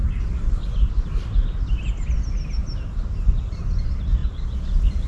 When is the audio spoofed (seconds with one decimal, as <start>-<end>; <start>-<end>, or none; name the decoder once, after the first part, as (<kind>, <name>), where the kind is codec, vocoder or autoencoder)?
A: none